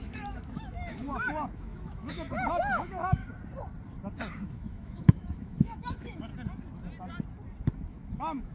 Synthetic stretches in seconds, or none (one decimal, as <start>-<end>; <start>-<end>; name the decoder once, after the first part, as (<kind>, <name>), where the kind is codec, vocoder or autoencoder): 0.0-3.2 (autoencoder, DAC-VAE); 4.3-6.3; 7.9-8.5